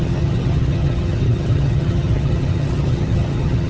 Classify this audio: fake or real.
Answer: fake